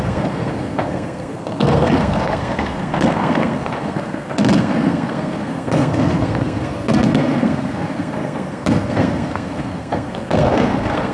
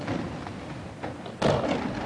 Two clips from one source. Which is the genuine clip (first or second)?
second